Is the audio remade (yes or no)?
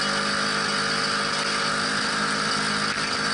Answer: no